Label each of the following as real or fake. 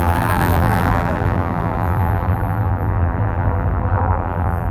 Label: fake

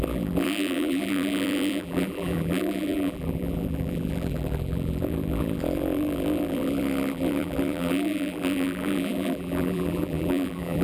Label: fake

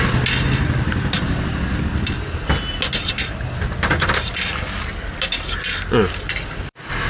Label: real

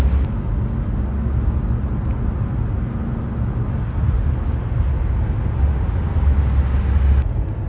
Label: real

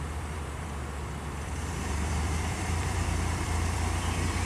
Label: fake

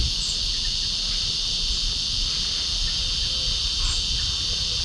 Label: real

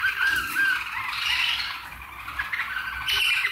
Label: fake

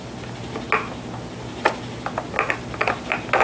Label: real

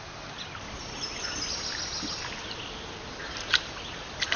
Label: real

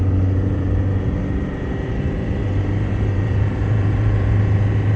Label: fake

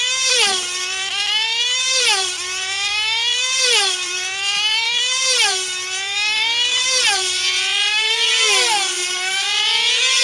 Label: fake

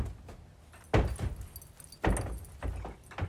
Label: real